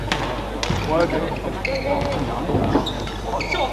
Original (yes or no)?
yes